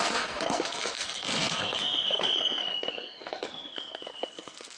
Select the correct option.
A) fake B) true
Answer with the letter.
A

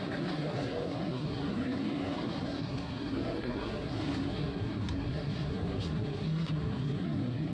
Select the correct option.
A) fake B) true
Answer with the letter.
A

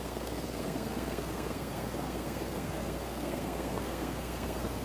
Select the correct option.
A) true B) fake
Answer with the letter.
B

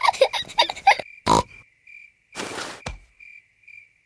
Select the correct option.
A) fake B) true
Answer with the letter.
B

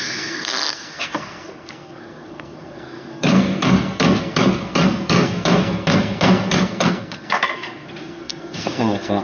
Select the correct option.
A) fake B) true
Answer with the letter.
A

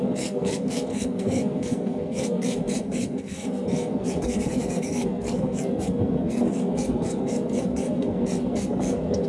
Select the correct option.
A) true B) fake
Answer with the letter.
B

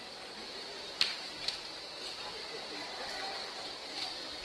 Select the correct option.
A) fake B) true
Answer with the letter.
B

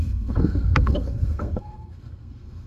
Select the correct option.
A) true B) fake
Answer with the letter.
B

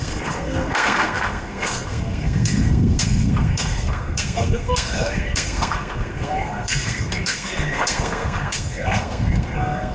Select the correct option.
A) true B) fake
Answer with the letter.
B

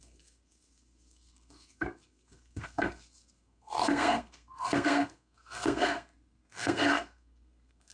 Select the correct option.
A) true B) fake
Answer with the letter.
B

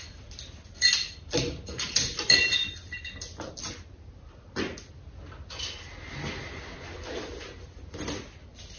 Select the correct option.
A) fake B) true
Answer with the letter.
B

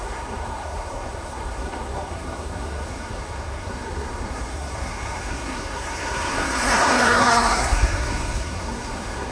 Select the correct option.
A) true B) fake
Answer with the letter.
B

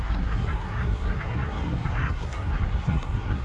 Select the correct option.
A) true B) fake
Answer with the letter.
B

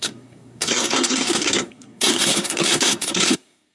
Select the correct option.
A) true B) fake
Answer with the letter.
B